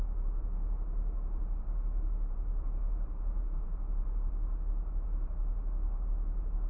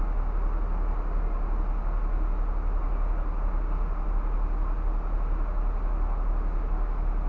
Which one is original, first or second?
second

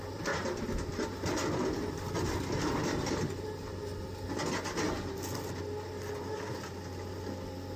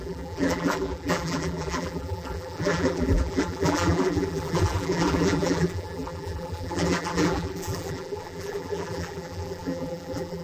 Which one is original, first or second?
first